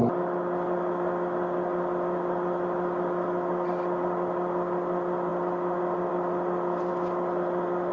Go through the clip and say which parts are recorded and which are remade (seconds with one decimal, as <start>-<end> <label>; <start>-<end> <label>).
0.0-7.9 recorded